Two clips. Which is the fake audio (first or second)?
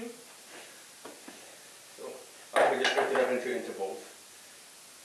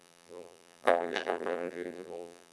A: second